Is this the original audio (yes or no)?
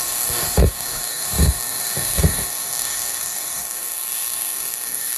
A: no